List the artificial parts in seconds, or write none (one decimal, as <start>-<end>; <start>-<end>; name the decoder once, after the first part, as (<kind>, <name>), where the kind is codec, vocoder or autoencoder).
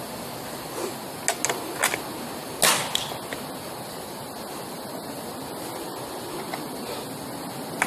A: none